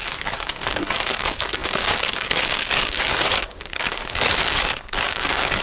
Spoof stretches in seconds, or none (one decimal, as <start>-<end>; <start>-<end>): 0.0-5.6